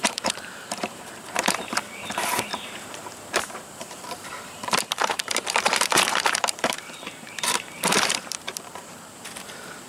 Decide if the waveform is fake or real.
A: fake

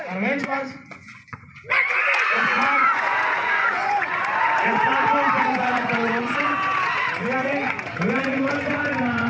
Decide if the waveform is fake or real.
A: fake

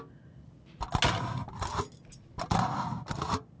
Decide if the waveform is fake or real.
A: real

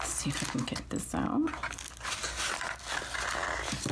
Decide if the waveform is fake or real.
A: real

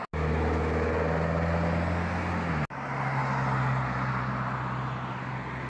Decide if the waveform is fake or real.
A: real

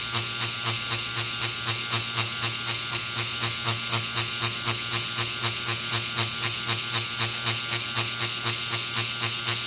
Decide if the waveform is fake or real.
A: real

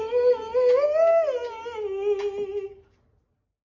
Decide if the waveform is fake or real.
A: real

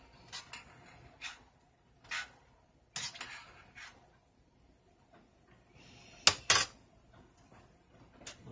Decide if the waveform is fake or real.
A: real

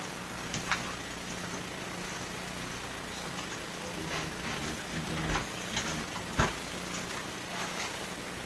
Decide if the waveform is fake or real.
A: real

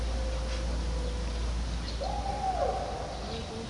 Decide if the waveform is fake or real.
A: real